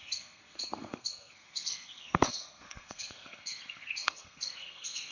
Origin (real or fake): fake